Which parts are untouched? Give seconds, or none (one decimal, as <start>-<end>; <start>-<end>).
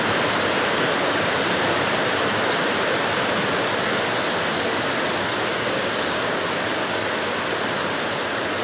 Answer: 0.0-5.5; 6.4-8.6